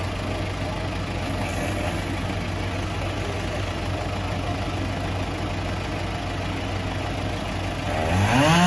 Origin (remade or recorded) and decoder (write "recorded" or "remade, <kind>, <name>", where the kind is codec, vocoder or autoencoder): recorded